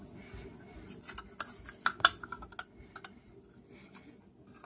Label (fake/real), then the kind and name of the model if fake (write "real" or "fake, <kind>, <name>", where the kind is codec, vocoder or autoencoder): real